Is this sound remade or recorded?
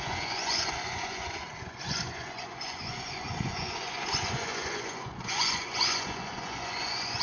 remade